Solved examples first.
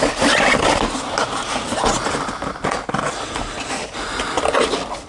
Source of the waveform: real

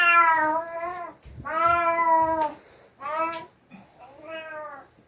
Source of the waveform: real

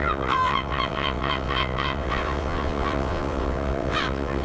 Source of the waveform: fake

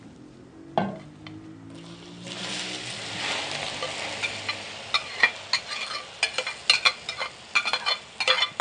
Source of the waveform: real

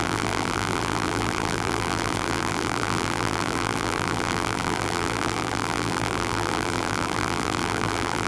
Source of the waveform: fake